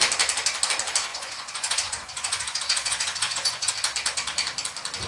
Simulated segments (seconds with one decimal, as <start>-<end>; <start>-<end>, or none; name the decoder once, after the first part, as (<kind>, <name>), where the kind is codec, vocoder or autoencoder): 1.1-3.7 (vocoder, Vocos)